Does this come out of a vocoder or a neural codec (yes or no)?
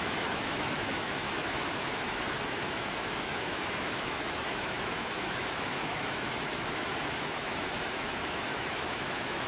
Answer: yes